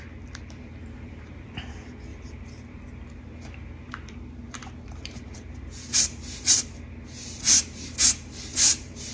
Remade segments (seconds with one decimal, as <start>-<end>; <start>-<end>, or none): 0.8-1.7; 2.1-6.2; 8.5-9.1

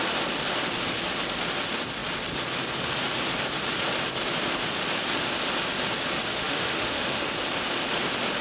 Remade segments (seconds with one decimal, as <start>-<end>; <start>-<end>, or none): 6.3-7.3

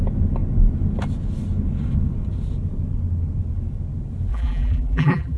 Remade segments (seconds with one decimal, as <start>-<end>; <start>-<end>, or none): 4.3-5.4

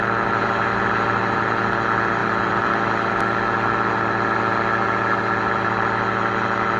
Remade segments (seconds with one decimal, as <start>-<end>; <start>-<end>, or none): 2.2-2.7